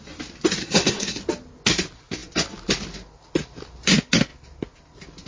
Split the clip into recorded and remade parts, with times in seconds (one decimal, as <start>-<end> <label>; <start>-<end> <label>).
0.0-0.6 recorded; 0.6-1.2 remade; 1.2-5.3 recorded